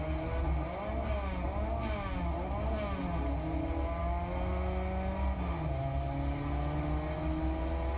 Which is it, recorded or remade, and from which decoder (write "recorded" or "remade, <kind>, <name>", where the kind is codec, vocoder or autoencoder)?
recorded